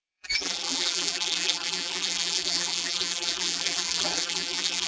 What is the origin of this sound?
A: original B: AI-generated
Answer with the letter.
B